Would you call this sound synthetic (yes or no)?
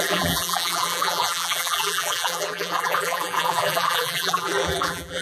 yes